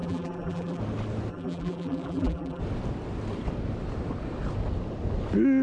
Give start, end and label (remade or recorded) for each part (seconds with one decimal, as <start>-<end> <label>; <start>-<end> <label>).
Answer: 0.0-0.8 remade; 0.8-1.3 recorded; 1.3-2.6 remade; 2.6-5.6 recorded